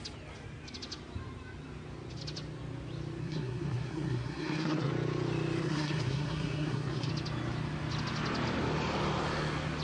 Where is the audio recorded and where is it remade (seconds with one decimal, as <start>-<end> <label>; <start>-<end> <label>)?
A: 0.0-3.2 recorded; 3.2-4.9 remade; 4.9-5.6 recorded; 5.6-7.1 remade; 7.1-9.8 recorded

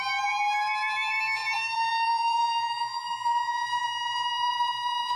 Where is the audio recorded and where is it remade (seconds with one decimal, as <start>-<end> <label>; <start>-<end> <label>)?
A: 0.0-5.2 remade

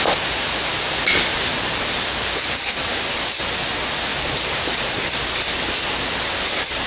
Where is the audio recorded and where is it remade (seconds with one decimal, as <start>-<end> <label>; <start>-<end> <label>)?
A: 0.0-1.5 recorded; 1.5-2.9 remade; 2.9-4.1 recorded; 4.1-5.2 remade; 5.2-6.9 recorded